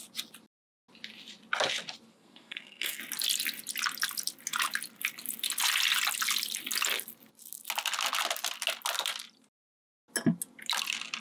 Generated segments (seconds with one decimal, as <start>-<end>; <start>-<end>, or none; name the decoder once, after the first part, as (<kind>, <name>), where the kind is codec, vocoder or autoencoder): 2.1-3.0 (codec, SNAC)